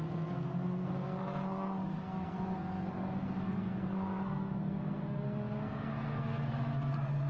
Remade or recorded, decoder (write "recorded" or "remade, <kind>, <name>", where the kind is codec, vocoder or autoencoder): remade, codec, SNAC